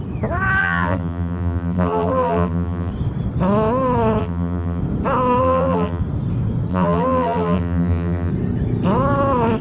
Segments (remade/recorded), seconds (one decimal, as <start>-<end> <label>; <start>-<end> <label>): 0.0-0.6 recorded; 0.6-2.9 remade; 2.9-4.2 recorded; 4.2-4.8 remade; 4.8-5.4 recorded; 5.4-6.0 remade; 6.0-6.7 recorded; 6.7-8.3 remade; 8.3-9.6 recorded